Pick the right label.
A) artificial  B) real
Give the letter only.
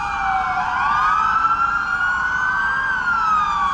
B